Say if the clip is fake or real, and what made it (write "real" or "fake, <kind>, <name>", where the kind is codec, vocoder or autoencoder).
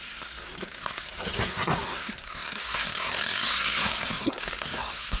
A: fake, codec, SNAC